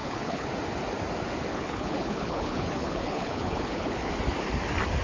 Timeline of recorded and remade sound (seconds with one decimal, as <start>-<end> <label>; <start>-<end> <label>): 0.0-0.5 remade; 0.5-1.5 recorded; 1.5-4.1 remade; 4.1-5.0 recorded